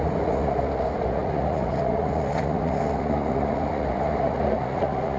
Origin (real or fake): fake